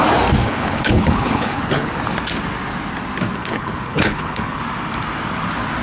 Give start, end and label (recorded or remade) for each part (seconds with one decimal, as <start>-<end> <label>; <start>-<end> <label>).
0.0-0.4 recorded; 0.4-1.9 remade; 1.9-3.4 recorded; 3.4-4.6 remade; 4.6-5.8 recorded